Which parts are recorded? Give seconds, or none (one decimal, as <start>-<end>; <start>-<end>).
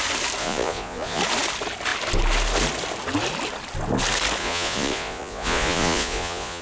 0.0-0.4; 1.2-4.4